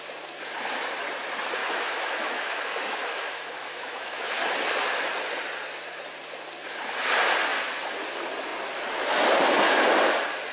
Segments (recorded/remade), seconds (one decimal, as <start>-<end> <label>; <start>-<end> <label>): 0.0-1.6 recorded; 1.6-4.4 remade; 4.4-10.5 recorded